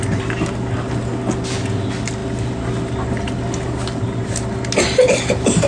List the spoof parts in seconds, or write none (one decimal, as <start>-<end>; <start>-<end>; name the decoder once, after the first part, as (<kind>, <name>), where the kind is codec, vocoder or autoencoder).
none